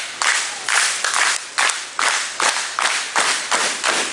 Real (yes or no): yes